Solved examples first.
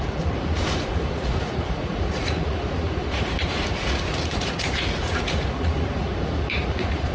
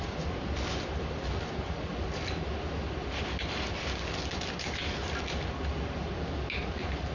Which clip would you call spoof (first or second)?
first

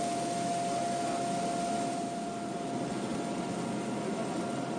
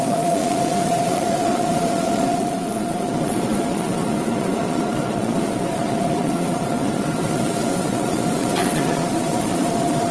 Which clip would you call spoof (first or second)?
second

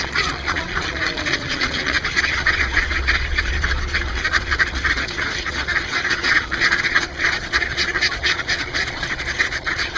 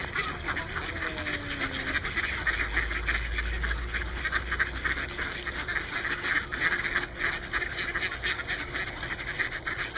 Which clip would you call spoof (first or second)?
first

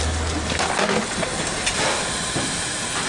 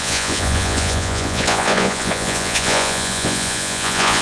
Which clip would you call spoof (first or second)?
second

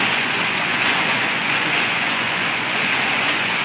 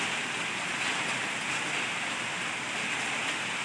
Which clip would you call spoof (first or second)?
first